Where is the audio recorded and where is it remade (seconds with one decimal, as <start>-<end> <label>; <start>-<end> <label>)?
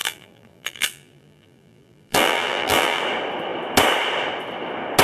0.0-3.0 remade; 3.0-5.0 recorded